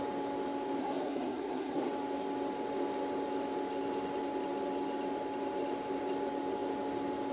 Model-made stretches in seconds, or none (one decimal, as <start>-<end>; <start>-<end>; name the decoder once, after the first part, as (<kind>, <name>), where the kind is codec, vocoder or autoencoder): 0.8-1.9 (codec, SNAC)